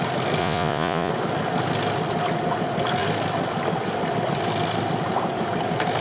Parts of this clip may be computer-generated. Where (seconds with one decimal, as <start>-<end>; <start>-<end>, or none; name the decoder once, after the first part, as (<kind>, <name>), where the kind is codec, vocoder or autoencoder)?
0.4-1.1 (vocoder, Vocos)